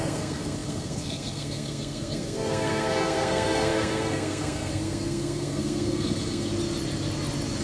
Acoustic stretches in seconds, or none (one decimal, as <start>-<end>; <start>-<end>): 6.5-7.6